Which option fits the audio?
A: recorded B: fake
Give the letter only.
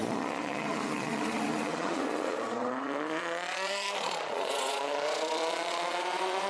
B